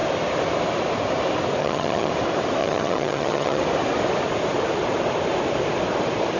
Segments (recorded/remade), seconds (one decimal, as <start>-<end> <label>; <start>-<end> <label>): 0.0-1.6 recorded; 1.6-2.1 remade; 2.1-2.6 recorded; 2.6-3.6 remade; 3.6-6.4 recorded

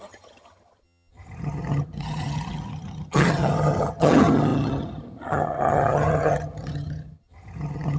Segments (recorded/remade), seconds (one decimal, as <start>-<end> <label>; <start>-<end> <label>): 0.0-8.0 remade

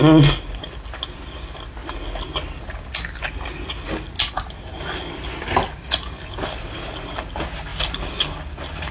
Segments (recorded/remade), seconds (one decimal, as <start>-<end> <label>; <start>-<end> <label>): 0.0-8.9 recorded

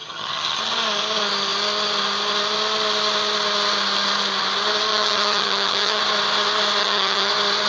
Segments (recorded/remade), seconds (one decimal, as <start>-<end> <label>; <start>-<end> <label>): 0.0-0.6 remade; 0.6-4.9 recorded; 4.9-6.0 remade; 6.0-6.8 recorded; 6.8-7.3 remade; 7.3-7.7 recorded

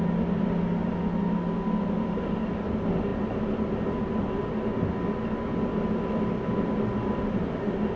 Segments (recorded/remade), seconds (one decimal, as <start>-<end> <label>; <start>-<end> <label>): 0.0-8.0 recorded